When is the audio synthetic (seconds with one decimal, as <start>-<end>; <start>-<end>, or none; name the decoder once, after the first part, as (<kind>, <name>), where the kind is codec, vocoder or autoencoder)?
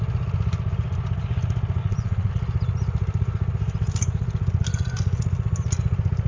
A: 1.8-2.3 (vocoder, Vocos)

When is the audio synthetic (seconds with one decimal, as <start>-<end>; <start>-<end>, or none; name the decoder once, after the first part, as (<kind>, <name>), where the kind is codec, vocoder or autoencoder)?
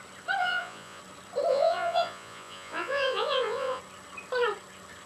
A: 0.4-1.0 (vocoder, Vocos); 1.5-3.8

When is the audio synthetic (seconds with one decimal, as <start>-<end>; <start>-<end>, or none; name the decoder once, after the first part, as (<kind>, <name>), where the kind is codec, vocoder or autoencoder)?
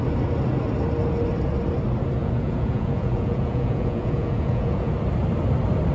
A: 2.2-4.9 (vocoder, Vocos)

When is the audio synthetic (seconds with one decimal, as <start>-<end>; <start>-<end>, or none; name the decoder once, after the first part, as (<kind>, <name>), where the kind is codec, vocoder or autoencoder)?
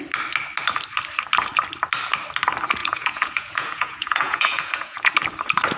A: 2.8-5.1 (vocoder, Vocos)